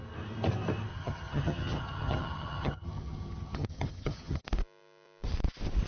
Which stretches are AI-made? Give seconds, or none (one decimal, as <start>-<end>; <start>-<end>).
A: 0.9-4.4